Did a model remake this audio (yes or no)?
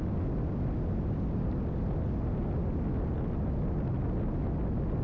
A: no